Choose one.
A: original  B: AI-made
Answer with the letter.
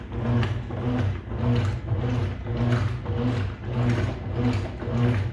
A